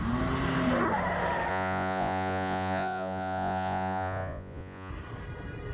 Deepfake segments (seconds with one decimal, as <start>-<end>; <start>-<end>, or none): 1.5-4.9